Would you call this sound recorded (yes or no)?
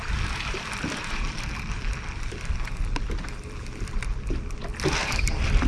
no